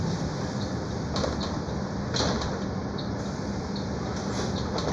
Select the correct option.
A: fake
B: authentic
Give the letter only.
B